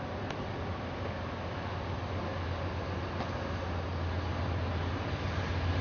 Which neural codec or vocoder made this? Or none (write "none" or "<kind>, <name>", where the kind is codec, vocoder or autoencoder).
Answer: none